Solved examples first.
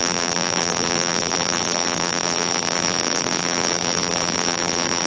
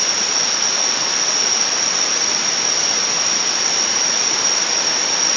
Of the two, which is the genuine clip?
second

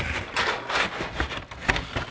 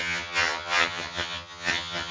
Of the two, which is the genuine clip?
first